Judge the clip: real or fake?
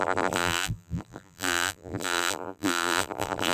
fake